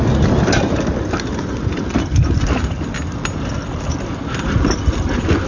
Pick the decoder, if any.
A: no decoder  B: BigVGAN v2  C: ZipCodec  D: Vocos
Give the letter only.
A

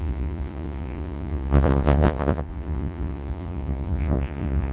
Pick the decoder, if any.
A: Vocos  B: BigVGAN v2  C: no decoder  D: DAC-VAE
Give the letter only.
A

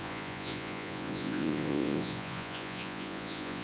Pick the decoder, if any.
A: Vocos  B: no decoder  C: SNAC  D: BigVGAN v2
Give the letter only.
A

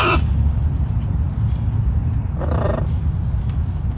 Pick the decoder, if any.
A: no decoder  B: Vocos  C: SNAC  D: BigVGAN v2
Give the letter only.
A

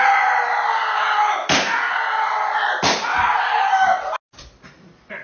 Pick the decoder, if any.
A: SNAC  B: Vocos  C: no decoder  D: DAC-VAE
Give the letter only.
C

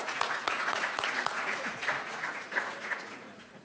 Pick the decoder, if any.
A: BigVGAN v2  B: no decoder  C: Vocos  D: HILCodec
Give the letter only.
C